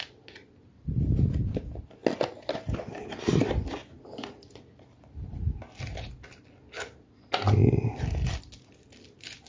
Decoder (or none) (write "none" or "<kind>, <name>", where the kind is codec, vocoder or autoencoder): none